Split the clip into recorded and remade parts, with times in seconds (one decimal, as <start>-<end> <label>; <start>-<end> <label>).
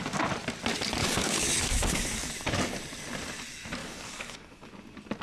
0.0-1.0 recorded; 1.0-2.3 remade; 2.3-3.8 recorded; 3.8-4.7 remade; 4.7-5.2 recorded